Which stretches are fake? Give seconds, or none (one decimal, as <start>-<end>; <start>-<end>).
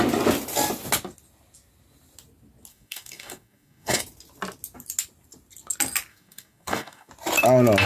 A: 2.7-4.0; 6.1-7.1